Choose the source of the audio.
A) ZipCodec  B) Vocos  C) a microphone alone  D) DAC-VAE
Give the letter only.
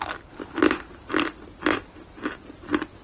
C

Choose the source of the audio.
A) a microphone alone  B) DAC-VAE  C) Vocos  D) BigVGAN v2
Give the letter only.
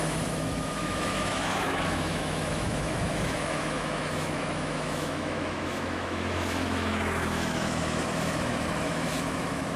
B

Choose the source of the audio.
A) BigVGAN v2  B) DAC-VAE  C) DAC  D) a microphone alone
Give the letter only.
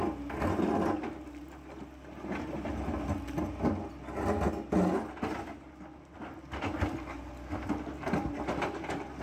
D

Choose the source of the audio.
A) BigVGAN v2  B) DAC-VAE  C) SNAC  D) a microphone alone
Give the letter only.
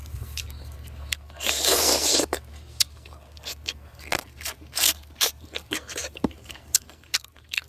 C